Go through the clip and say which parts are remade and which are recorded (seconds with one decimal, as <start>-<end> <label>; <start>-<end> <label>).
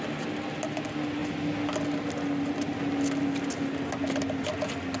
0.0-5.0 recorded